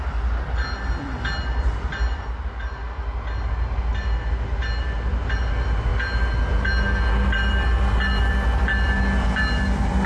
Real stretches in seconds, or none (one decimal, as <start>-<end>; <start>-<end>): 0.0-10.1